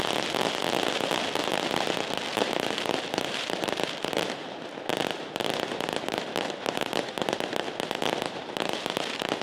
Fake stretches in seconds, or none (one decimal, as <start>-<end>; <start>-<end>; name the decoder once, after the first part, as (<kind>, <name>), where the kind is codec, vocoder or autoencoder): 2.3-4.2 (vocoder, BigVGAN v2); 5.9-9.4